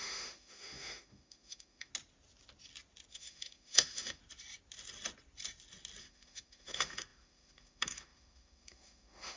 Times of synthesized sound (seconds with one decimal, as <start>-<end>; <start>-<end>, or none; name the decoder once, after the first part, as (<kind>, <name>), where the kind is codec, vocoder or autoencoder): 0.0-1.9 (autoencoder, DAC-VAE); 3.1-4.2; 6.0-9.4